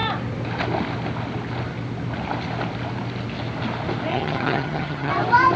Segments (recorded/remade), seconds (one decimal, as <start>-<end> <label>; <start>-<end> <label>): 0.0-4.1 recorded; 4.1-5.1 remade; 5.1-5.6 recorded